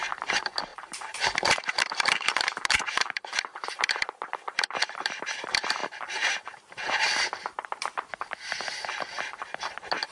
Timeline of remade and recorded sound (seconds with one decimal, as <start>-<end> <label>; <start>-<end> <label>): 0.0-0.7 recorded; 0.7-3.4 remade; 3.4-5.8 recorded; 5.8-8.2 remade; 8.2-10.1 recorded